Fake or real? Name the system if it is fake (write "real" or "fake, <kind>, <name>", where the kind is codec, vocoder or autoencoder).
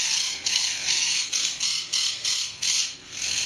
fake, codec, SNAC